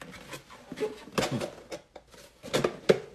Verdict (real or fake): real